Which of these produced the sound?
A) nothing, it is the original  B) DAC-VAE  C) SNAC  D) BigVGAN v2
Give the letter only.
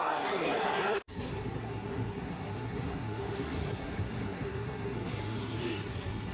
C